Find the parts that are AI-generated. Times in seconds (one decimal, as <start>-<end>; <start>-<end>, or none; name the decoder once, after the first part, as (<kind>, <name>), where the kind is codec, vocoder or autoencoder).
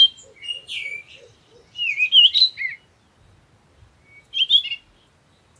none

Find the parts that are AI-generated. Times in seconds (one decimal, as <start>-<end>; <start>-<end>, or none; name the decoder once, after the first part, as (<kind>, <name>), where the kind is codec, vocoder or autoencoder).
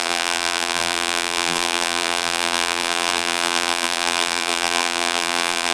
0.0-5.7 (vocoder, BigVGAN v2)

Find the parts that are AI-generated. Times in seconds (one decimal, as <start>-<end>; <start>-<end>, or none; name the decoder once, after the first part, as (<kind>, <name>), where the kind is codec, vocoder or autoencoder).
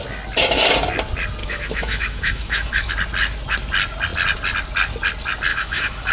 1.4-2.9 (autoencoder, DAC-VAE); 5.5-6.1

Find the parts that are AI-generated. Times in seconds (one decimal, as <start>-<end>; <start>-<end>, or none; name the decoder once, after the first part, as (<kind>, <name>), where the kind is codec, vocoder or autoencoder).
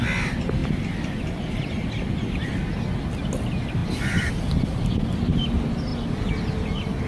none